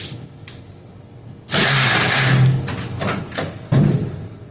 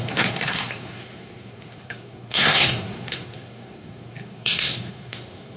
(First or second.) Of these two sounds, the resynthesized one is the second